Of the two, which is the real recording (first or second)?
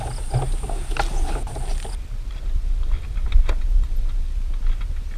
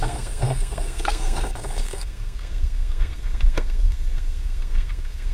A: first